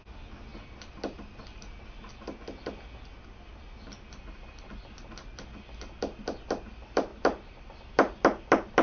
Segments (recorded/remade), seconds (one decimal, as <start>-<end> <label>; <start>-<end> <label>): 0.0-8.8 recorded